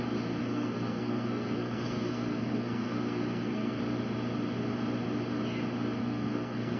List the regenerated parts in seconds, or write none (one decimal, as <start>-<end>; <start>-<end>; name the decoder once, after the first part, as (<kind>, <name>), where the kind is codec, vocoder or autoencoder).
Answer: 0.4-3.8 (codec, SNAC); 6.0-6.8